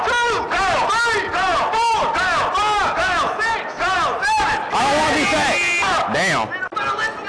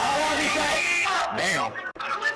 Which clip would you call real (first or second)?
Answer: first